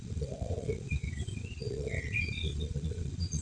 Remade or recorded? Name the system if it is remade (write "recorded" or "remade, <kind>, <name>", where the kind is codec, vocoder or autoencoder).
remade, vocoder, WaveNeXt